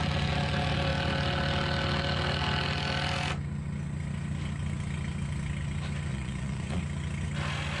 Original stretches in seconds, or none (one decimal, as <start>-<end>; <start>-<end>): 0.0-6.1; 6.8-7.8